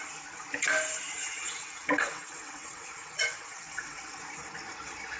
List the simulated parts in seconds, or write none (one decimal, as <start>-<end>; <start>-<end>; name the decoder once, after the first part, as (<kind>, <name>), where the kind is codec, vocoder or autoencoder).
1.2-4.2 (vocoder, WaveNeXt)